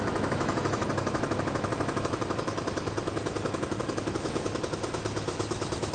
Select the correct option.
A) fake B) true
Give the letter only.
A